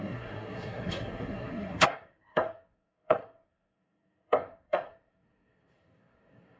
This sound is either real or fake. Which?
fake